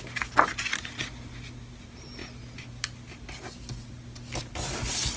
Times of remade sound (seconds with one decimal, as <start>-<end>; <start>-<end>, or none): none